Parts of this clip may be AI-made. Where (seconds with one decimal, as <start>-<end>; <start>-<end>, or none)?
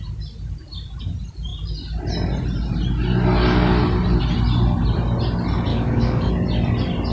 5.7-6.3